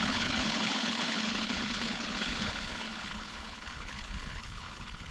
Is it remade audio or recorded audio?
remade